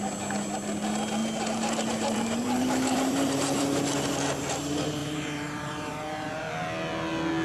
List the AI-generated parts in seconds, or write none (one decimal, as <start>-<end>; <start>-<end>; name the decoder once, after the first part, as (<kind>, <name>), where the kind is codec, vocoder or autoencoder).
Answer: 1.2-3.8 (vocoder, BigVGAN v2); 5.0-6.5